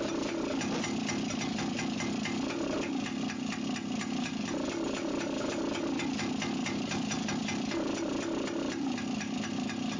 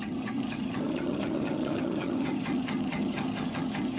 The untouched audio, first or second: first